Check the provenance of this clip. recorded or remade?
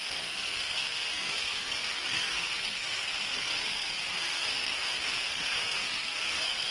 remade